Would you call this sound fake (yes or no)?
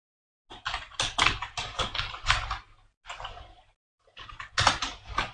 no